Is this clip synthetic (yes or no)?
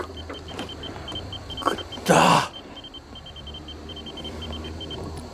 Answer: yes